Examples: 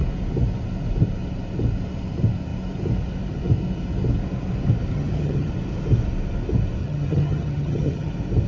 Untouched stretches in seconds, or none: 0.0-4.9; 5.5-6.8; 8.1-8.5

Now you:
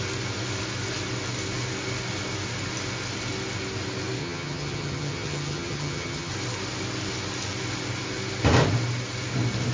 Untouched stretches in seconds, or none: 0.0-4.2; 6.3-9.7

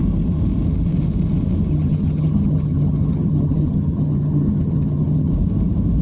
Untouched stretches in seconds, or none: 0.0-1.7; 5.3-6.0

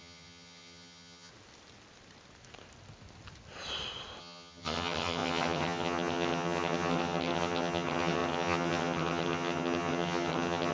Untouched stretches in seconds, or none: 1.3-4.2